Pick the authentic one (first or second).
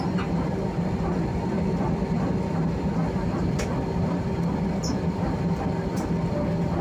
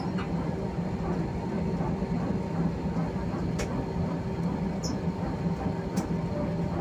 second